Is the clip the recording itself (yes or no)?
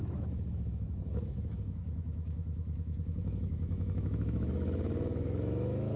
no